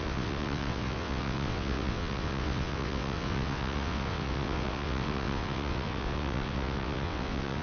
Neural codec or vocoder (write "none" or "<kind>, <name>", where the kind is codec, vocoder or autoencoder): vocoder, WaveNeXt